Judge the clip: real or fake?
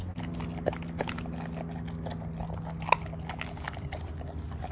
real